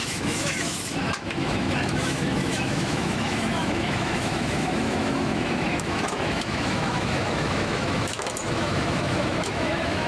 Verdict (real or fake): fake